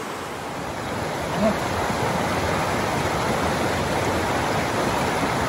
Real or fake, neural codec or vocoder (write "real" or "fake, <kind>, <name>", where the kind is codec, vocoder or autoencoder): real